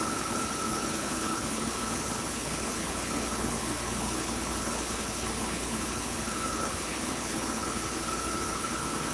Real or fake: fake